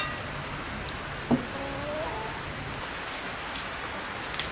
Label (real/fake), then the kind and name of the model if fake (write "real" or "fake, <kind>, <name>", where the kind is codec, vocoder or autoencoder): real